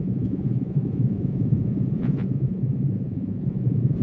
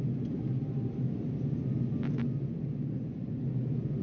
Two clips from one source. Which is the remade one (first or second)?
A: first